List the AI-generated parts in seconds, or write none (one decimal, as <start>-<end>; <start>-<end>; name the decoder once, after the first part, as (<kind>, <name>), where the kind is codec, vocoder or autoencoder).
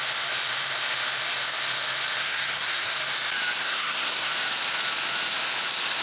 2.2-3.0 (codec, SNAC); 3.6-4.3